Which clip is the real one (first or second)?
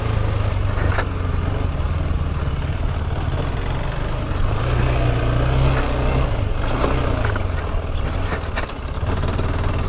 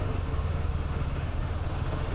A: first